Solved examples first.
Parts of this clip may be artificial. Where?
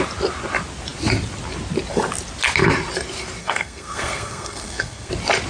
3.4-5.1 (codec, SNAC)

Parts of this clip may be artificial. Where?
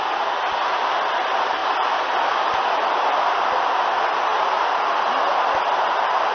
none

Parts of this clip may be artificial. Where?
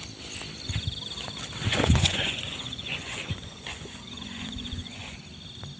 1.7-5.2 (vocoder, Vocos)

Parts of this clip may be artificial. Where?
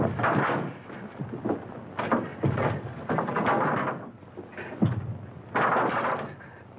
none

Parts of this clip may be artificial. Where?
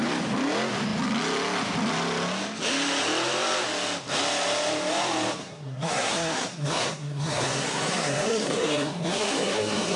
5.4-10.0 (codec, SNAC)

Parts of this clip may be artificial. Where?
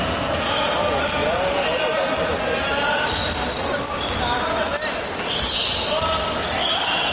none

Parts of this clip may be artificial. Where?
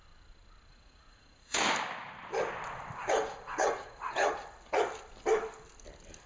0.7-1.6 (vocoder, Vocos); 3.0-4.3